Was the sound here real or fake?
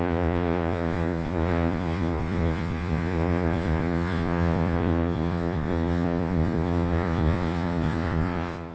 fake